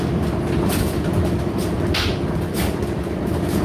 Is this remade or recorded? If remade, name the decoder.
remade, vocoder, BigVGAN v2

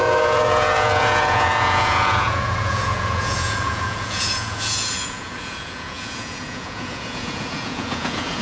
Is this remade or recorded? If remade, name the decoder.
remade, vocoder, Vocos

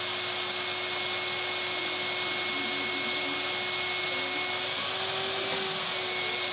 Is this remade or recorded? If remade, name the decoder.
recorded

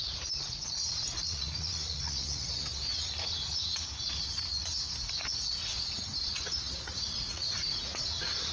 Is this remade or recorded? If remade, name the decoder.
remade, vocoder, Vocos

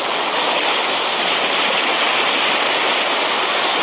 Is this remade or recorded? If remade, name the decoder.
recorded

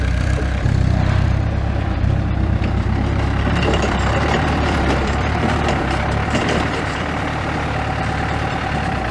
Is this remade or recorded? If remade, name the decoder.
remade, vocoder, BigVGAN v2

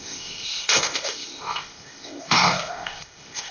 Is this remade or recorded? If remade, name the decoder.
remade, codec, ZipCodec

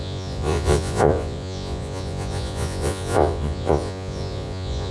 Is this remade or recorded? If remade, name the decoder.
remade, vocoder, Vocos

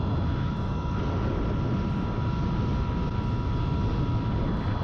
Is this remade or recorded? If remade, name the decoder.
recorded